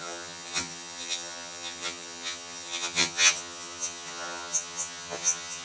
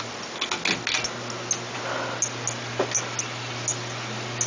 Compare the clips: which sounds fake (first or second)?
first